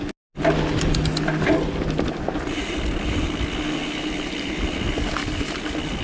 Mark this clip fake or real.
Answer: real